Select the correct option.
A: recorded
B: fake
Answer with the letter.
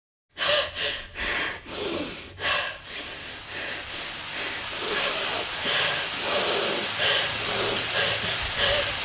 A